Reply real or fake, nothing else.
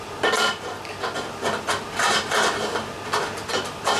real